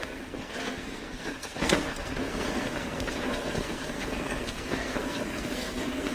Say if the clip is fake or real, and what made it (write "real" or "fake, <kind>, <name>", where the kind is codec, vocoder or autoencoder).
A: fake, codec, SNAC